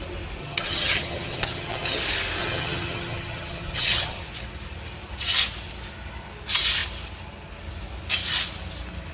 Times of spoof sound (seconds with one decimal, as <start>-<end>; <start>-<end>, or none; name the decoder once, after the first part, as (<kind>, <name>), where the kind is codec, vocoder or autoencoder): 0.4-2.0 (vocoder, HiFi-GAN); 2.4-4.2